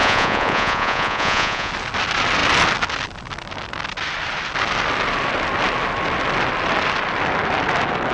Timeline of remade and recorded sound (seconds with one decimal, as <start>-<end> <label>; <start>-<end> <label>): 0.0-1.7 remade; 1.7-8.1 recorded

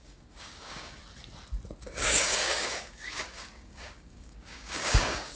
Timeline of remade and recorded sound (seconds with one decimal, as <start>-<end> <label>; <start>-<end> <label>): 0.0-1.0 remade; 1.0-1.8 recorded; 1.8-5.4 remade

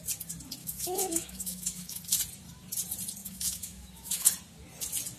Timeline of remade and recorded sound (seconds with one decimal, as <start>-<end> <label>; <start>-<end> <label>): 0.0-0.6 recorded; 0.6-2.0 remade; 2.0-3.2 recorded; 3.2-4.3 remade; 4.3-5.2 recorded

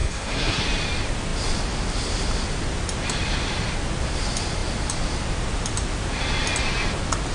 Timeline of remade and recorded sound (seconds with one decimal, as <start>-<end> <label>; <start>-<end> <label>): 0.0-0.6 remade; 0.6-7.3 recorded

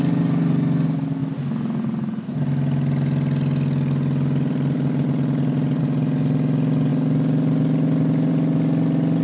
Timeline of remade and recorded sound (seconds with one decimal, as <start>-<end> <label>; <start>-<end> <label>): 0.0-9.2 recorded